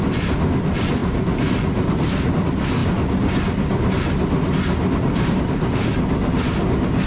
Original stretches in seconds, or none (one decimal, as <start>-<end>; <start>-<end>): 0.0-7.1

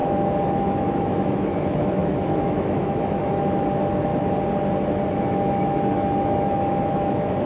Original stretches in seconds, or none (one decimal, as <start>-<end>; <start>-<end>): 4.1-5.2